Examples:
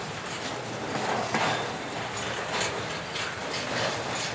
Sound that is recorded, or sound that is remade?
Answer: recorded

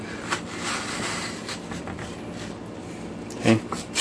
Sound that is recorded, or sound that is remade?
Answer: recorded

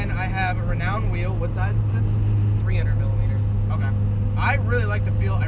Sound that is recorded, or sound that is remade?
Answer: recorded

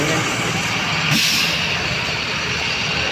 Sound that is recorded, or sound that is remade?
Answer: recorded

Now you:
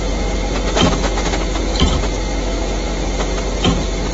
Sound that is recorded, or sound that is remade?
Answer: recorded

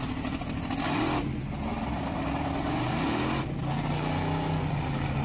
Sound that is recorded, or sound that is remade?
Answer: recorded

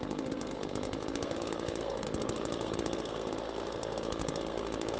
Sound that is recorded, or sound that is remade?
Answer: remade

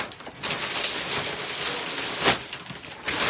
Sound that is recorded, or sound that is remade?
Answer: recorded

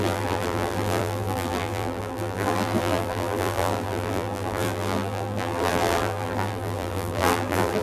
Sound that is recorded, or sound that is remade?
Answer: remade